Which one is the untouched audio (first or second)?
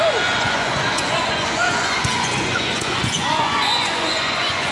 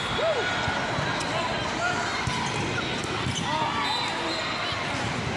second